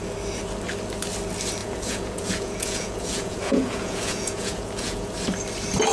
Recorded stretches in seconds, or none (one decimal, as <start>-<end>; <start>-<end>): 0.0-1.6; 5.1-5.9